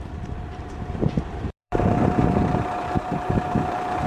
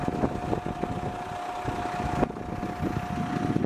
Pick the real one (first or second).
second